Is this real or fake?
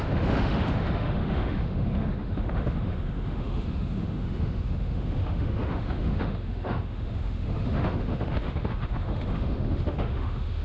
fake